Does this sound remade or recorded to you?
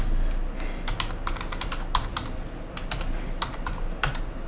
recorded